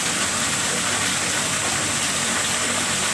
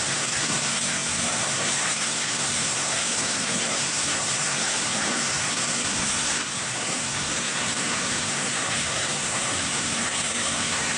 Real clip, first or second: first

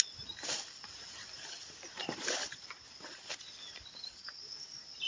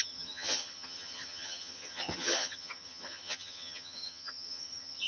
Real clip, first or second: first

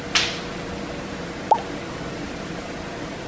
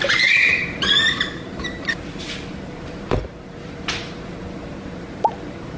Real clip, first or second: first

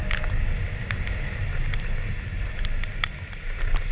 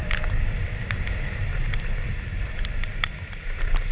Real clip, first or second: first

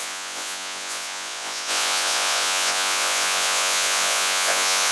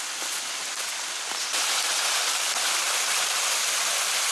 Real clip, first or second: second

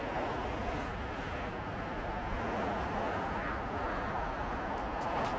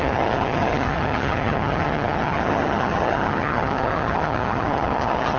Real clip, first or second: first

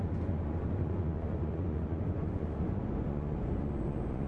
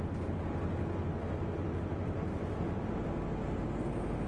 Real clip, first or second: second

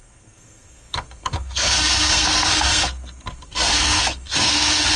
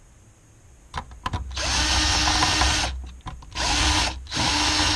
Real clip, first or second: second